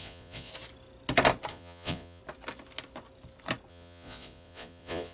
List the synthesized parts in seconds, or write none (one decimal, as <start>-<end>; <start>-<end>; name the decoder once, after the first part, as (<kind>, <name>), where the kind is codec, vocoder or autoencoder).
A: 0.0-0.5 (vocoder, Vocos); 1.5-2.2; 3.7-5.1